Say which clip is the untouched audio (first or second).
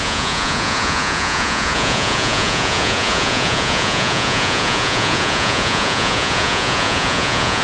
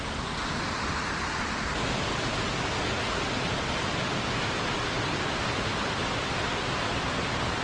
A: second